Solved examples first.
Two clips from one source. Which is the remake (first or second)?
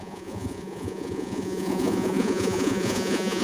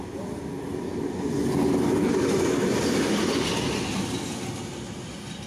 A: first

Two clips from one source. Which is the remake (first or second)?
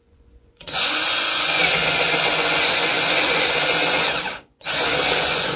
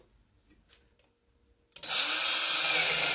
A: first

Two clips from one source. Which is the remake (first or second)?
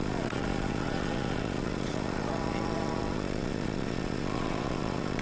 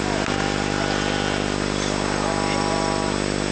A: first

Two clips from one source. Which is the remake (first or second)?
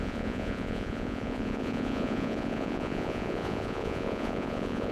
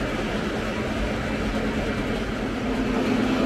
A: first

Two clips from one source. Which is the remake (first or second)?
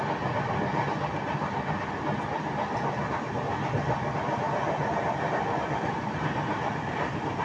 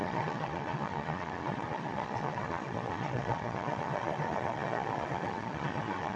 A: second